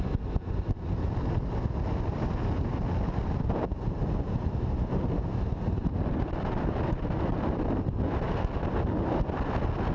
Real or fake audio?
real